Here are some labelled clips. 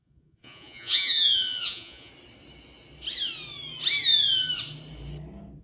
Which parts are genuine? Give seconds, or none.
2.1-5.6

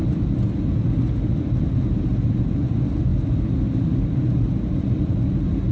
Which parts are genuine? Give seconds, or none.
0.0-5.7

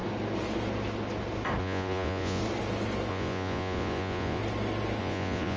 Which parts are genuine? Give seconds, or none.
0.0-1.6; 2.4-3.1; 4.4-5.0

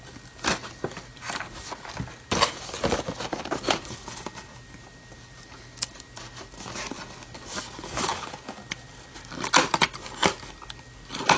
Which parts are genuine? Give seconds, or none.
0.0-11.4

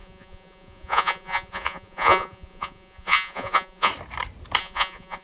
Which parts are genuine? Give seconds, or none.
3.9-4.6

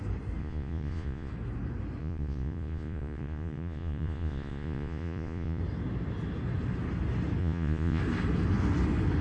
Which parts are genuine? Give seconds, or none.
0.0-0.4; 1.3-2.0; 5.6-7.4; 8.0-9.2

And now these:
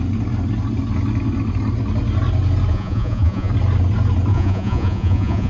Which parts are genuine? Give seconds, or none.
0.0-2.7; 3.5-4.3

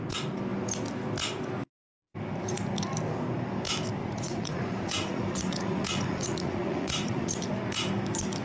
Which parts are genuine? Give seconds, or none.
0.0-4.0; 7.5-8.4